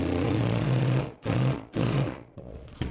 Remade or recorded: remade